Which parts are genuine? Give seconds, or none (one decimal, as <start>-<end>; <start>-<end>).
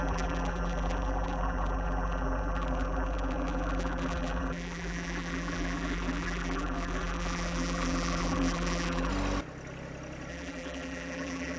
9.1-10.3